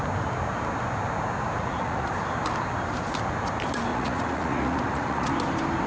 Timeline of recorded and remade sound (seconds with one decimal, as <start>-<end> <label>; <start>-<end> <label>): 0.0-1.6 recorded; 1.6-2.1 remade; 2.1-3.9 recorded; 3.9-5.3 remade; 5.3-5.9 recorded

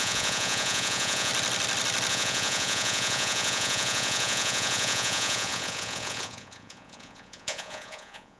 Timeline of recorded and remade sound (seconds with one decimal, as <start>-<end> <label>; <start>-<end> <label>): 0.0-1.3 remade; 1.3-2.1 recorded; 2.1-8.4 remade

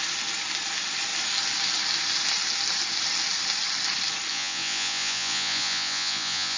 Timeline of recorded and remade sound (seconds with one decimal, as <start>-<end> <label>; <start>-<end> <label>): 0.0-4.3 recorded; 4.3-6.6 remade